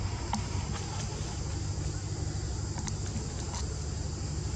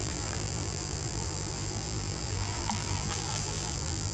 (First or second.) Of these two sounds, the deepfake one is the second